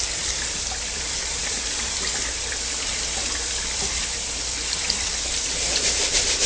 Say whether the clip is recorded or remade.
remade